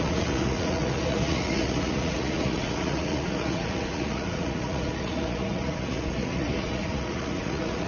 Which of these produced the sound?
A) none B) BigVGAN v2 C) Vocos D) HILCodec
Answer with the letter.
C